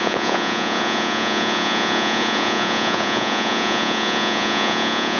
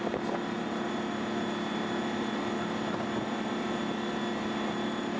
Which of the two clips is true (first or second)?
second